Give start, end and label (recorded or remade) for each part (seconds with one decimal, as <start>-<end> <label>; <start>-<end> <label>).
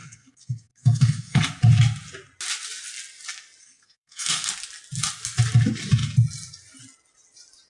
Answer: 0.0-1.4 remade; 1.4-3.6 recorded; 3.6-4.5 remade; 4.5-7.7 recorded